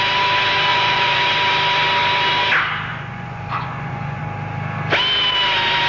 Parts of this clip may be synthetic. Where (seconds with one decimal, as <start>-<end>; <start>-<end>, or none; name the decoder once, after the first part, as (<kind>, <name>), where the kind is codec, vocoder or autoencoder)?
0.7-1.2 (vocoder, Vocos); 2.9-4.2